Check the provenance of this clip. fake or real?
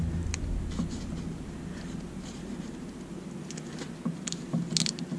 real